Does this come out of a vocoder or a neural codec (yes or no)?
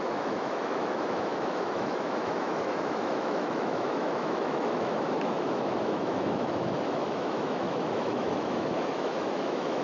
yes